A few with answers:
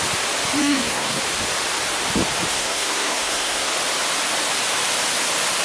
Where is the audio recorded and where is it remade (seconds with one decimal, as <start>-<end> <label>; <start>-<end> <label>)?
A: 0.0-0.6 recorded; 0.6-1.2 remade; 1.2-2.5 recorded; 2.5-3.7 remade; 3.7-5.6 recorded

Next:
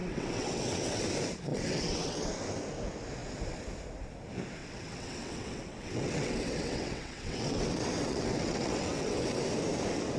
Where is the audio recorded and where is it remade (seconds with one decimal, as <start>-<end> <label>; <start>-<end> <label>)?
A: 0.0-1.0 remade; 1.0-1.5 recorded; 1.5-2.3 remade; 2.3-4.6 recorded; 4.6-9.4 remade; 9.4-10.2 recorded

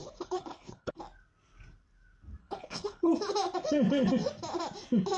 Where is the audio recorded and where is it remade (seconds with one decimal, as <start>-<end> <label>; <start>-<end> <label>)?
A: 0.0-1.0 remade; 1.0-2.4 recorded; 2.4-3.1 remade; 3.1-5.2 recorded